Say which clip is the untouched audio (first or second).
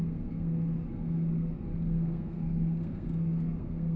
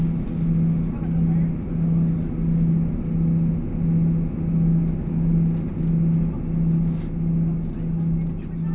second